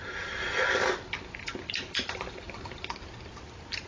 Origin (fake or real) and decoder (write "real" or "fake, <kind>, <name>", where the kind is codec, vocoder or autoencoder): real